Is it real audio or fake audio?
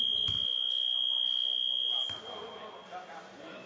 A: real